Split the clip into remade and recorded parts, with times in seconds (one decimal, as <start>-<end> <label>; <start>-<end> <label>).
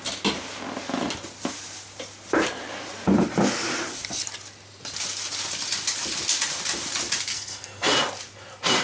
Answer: 0.0-7.3 recorded; 7.3-7.9 remade; 7.9-8.8 recorded